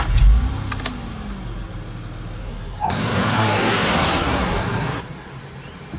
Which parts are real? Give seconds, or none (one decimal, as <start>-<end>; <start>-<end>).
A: 0.0-2.4; 5.4-6.0